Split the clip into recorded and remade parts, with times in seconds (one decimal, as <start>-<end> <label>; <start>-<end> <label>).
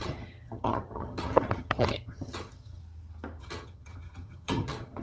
0.0-2.8 remade; 2.8-3.4 recorded; 3.4-5.0 remade